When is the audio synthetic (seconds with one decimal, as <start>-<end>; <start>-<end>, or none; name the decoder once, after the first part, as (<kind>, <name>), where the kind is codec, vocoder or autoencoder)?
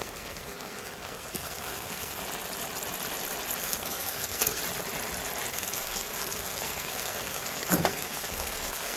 0.0-2.2 (codec, SNAC); 3.6-4.6; 5.5-9.0